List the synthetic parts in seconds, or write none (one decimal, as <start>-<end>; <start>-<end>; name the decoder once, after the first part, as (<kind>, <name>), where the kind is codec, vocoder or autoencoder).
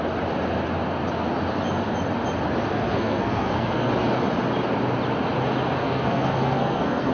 2.7-3.9 (codec, SNAC); 5.8-7.1